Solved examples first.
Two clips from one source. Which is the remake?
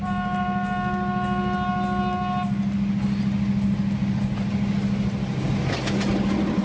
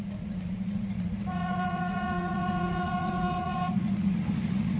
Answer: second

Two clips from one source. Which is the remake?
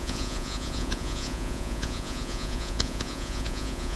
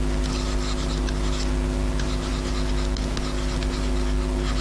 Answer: first